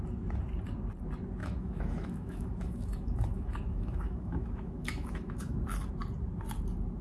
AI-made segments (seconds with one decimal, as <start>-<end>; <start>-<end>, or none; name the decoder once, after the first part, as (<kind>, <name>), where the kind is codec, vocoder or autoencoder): 1.4-5.6 (autoencoder, DAC-VAE)